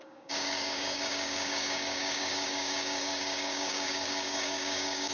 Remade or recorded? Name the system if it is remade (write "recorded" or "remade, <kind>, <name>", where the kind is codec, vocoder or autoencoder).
remade, codec, DAC